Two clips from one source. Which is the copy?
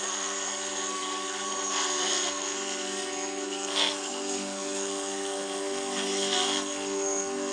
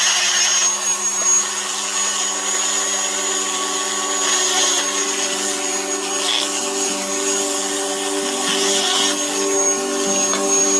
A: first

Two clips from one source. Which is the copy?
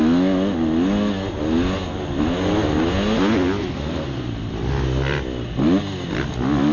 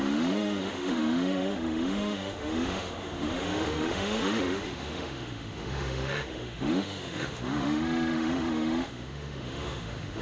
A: second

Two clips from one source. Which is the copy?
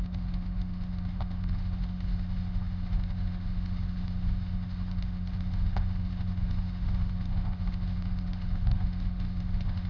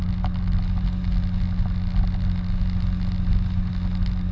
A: first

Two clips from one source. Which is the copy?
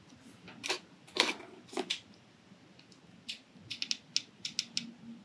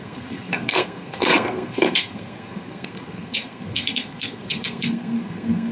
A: second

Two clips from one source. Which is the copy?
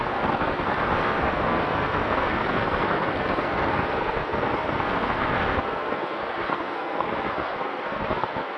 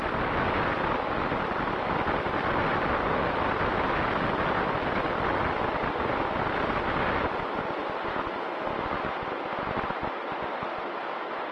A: first